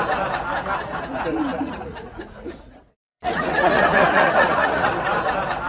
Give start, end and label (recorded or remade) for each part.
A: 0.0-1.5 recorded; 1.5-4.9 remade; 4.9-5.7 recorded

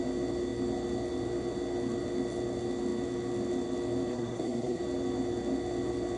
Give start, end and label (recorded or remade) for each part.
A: 0.0-4.1 recorded; 4.1-4.8 remade; 4.8-6.2 recorded

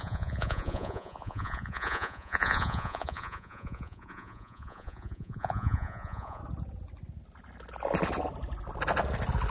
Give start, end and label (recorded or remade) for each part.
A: 0.0-6.4 remade; 6.4-9.5 recorded

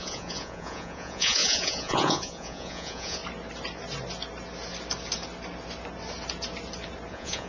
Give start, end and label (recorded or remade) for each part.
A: 0.0-3.2 remade; 3.2-7.1 recorded; 7.1-7.5 remade

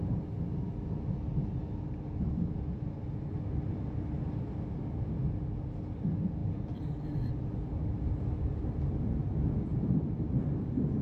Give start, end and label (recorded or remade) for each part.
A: 0.0-6.4 recorded; 6.4-7.3 remade; 7.3-9.7 recorded; 9.7-10.5 remade; 10.5-11.0 recorded

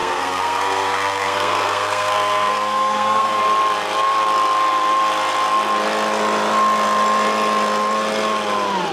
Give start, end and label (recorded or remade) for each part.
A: 0.0-3.4 remade; 3.4-8.9 recorded

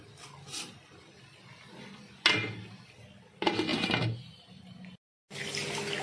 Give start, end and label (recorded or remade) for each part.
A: 0.0-6.0 recorded